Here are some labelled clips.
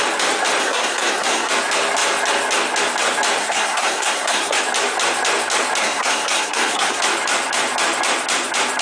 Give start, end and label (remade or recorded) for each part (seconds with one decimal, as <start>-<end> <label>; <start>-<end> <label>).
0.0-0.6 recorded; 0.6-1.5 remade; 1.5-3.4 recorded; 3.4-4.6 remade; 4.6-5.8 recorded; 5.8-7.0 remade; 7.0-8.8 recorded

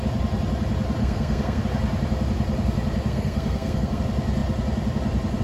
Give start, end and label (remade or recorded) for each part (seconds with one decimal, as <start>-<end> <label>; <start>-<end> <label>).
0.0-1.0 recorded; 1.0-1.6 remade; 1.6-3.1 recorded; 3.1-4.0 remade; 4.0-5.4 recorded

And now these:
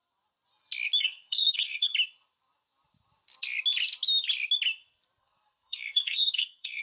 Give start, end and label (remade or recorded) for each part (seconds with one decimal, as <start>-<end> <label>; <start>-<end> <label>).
0.0-1.0 recorded; 1.0-1.9 remade; 1.9-5.2 recorded; 5.2-6.8 remade